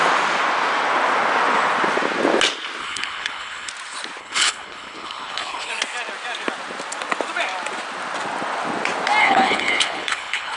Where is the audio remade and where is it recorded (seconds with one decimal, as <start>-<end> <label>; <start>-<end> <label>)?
0.0-2.8 recorded; 2.8-3.7 remade; 3.7-4.2 recorded; 4.2-5.7 remade; 5.7-9.2 recorded; 9.2-10.6 remade